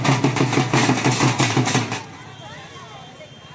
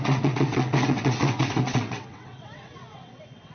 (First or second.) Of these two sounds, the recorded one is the first